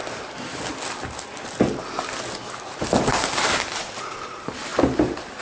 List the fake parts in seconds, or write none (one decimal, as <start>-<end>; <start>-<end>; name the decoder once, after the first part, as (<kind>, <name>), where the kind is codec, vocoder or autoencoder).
3.1-3.9 (vocoder, BigVGAN v2)